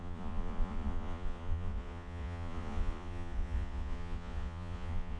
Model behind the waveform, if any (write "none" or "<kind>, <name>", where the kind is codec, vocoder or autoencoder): vocoder, Vocos